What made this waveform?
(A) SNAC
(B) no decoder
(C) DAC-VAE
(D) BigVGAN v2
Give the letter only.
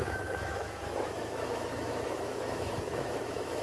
C